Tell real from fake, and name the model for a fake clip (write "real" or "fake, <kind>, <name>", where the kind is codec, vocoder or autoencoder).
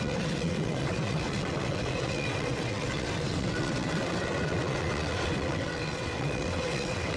fake, vocoder, WaveNeXt